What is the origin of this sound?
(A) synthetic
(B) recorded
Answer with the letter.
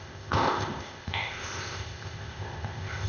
A